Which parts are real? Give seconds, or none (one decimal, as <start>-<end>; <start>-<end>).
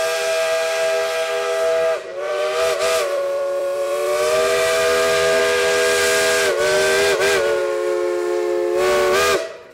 0.0-2.1; 5.4-9.7